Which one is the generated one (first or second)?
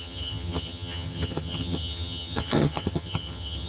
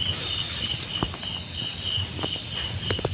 first